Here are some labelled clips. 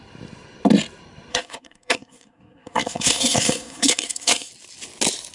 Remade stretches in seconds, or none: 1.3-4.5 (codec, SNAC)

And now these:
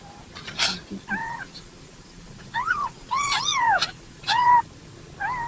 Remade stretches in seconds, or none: 1.2-4.5 (vocoder, Vocos)

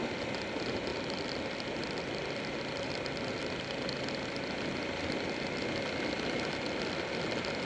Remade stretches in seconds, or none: none

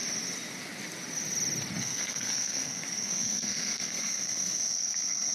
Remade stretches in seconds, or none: 1.8-5.3 (codec, SNAC)

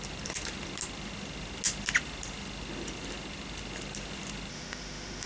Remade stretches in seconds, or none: 4.5-5.3 (autoencoder, DAC-VAE)

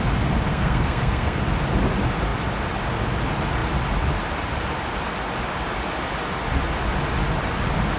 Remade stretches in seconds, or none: 0.5-1.4 (codec, SNAC)

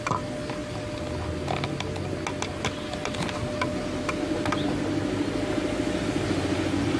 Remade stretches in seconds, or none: none